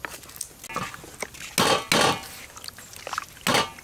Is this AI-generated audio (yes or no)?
no